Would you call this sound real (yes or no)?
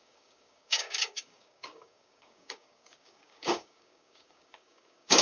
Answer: no